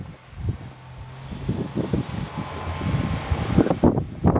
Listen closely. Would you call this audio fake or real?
real